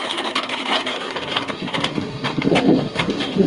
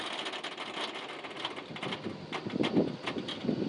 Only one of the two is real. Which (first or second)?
second